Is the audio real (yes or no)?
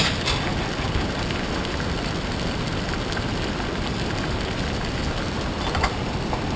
yes